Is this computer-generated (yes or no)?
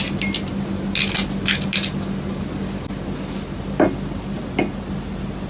no